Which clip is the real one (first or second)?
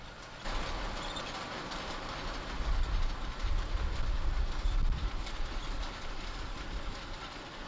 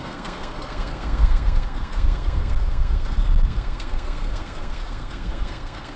first